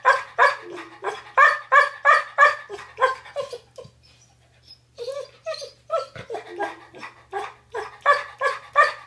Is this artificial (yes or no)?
no